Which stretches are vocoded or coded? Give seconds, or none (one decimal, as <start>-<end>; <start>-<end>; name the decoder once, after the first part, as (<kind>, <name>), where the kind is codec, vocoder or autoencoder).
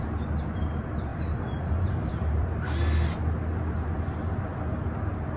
1.1-2.5 (vocoder, BigVGAN v2)